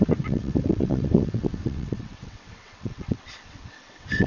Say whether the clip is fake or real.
fake